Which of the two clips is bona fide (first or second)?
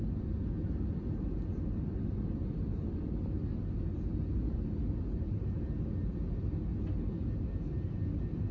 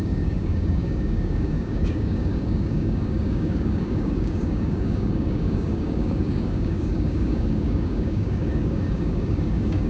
first